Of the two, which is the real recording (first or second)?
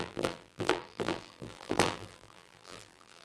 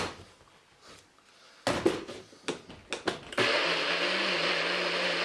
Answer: second